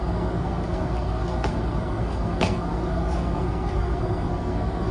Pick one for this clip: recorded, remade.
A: remade